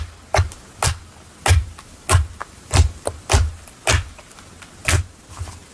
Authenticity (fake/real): real